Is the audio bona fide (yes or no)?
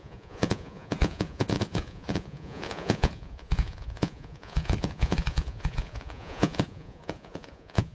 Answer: no